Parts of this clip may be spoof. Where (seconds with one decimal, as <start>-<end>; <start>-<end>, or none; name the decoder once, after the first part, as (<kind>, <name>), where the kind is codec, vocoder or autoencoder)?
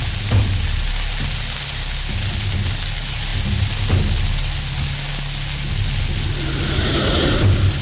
none